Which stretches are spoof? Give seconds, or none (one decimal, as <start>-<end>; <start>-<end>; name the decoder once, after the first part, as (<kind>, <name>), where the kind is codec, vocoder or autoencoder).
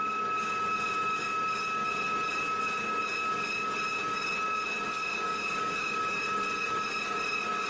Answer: 5.1-6.2 (codec, DAC)